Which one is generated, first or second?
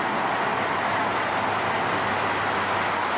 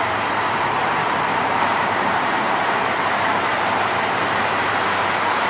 second